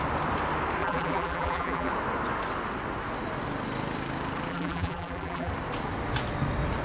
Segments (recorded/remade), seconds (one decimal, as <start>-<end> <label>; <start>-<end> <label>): 0.0-0.8 recorded; 0.8-1.9 remade; 1.9-4.5 recorded; 4.5-5.5 remade; 5.5-6.8 recorded